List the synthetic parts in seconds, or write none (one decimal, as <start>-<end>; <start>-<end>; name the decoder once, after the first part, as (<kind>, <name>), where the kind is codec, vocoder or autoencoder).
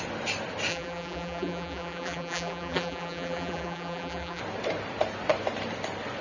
0.7-4.4 (vocoder, BigVGAN v2)